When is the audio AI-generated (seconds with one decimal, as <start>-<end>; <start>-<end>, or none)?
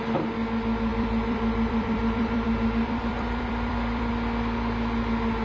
0.9-4.1